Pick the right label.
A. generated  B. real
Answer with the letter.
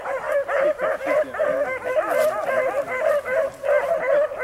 B